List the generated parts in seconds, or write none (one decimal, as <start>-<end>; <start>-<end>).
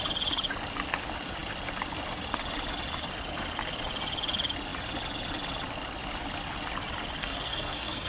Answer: 7.2-8.1